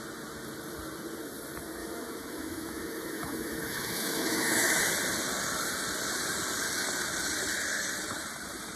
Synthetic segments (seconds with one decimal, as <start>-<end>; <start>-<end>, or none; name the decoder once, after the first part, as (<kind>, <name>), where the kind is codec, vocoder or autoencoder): 1.8-4.9 (autoencoder, DAC-VAE)